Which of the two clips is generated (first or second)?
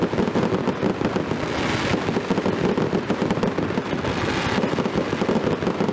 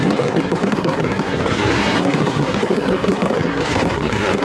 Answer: second